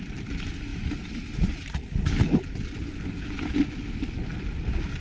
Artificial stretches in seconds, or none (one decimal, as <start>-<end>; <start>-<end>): none